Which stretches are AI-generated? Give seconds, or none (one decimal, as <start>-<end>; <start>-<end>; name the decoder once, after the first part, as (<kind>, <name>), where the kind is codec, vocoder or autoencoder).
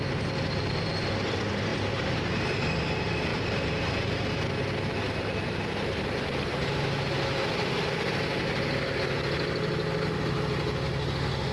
none